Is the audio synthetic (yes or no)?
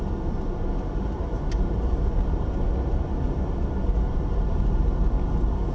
no